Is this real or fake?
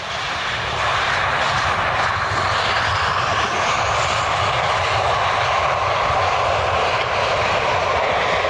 real